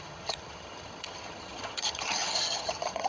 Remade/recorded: remade